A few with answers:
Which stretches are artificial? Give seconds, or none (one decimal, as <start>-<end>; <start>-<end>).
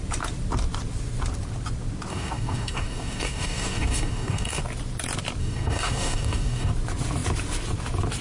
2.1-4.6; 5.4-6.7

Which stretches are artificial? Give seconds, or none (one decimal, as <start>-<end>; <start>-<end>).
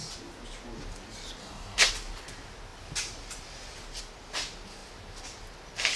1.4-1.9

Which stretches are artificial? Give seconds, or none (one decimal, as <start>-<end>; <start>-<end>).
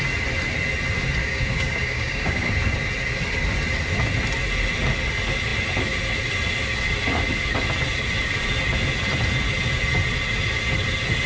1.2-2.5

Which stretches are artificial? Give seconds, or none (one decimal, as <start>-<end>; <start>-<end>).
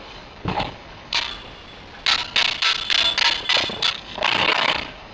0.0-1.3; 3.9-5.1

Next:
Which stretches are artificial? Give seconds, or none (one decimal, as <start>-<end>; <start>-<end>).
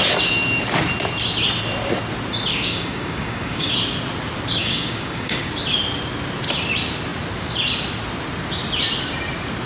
2.5-3.7; 4.6-5.5